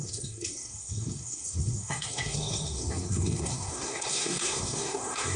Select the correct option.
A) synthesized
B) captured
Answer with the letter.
A